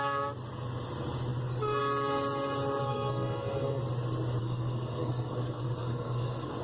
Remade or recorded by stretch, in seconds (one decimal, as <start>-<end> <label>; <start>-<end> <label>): 0.0-2.8 recorded; 2.8-3.8 remade; 3.8-4.4 recorded; 4.4-6.6 remade